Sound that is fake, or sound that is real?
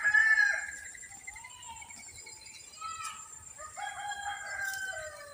real